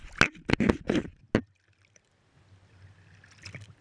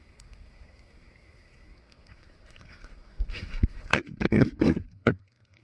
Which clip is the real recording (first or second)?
first